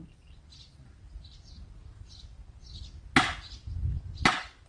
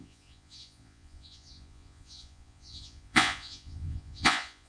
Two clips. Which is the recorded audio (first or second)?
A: first